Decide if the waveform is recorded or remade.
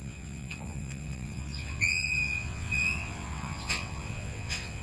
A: remade